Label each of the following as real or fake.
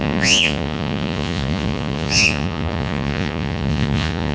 fake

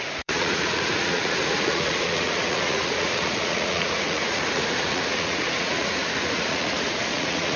fake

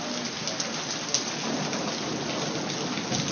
real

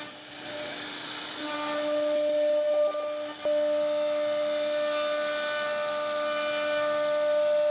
real